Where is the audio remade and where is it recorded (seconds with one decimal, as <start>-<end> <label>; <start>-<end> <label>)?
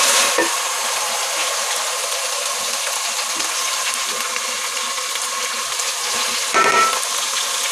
0.0-7.7 recorded